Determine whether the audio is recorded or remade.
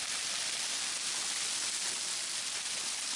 recorded